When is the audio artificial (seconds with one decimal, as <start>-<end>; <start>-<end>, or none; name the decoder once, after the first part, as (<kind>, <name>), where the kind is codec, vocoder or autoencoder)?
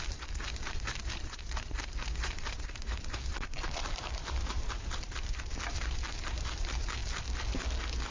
0.0-7.0 (vocoder, BigVGAN v2)